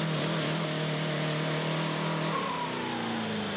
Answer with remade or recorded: recorded